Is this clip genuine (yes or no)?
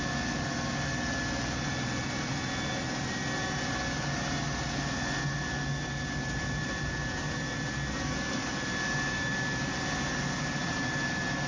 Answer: yes